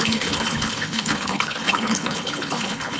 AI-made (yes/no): yes